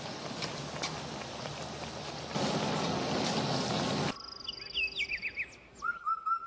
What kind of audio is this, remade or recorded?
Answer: recorded